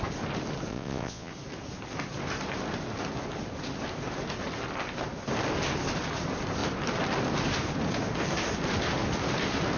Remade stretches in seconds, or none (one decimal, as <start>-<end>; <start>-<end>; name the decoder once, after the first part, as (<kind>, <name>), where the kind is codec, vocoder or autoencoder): 0.7-1.3 (vocoder, Vocos)